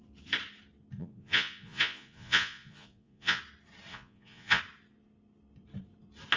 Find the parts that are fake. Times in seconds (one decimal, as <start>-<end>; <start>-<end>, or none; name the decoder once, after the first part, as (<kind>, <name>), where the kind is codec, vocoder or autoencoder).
1.0-3.4 (vocoder, Vocos); 3.9-4.6